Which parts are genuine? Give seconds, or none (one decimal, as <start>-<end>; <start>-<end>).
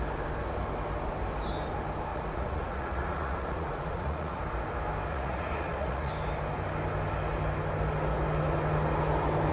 0.0-2.1; 4.4-5.1; 6.1-9.5